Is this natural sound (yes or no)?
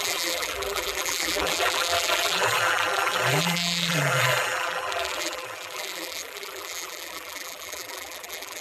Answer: no